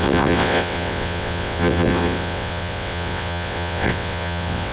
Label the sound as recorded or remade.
remade